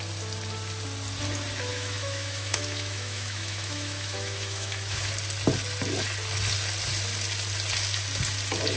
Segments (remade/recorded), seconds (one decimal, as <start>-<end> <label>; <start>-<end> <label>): 0.0-1.7 recorded; 1.7-5.1 remade; 5.1-8.8 recorded